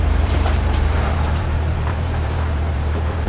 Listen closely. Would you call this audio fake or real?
fake